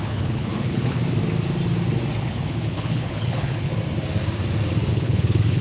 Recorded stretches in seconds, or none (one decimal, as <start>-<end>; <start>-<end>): 1.0-2.2; 3.7-4.9